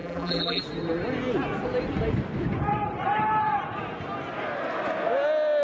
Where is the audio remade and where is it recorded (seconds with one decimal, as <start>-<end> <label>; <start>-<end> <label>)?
0.0-0.6 remade; 0.6-5.6 recorded